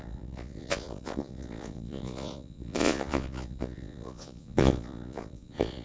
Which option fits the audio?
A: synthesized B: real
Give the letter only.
A